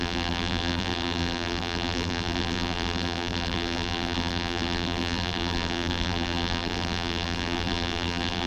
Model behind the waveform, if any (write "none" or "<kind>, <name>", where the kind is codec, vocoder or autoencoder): vocoder, BigVGAN v2